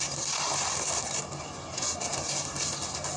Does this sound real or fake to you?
real